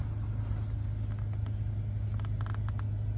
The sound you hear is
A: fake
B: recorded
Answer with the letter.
B